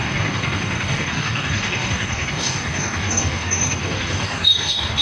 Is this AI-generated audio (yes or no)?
yes